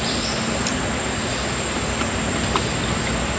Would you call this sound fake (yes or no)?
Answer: no